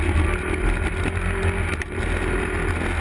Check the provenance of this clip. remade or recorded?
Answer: recorded